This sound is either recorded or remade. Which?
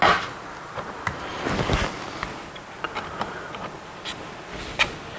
recorded